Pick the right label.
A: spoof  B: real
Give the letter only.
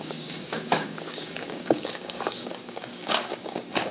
A